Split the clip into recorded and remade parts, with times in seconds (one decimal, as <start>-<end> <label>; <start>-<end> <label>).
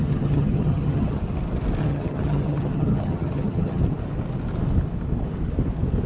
0.0-1.2 remade; 1.2-1.8 recorded; 1.8-3.8 remade; 3.8-6.1 recorded